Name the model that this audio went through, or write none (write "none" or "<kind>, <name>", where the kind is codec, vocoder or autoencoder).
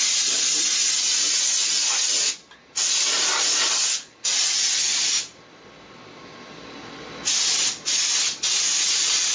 none